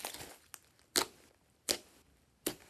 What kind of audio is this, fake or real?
real